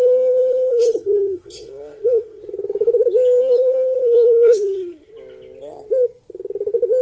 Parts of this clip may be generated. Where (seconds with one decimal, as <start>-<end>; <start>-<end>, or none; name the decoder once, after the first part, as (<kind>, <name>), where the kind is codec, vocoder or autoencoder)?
0.0-2.4 (codec, SNAC); 3.4-5.1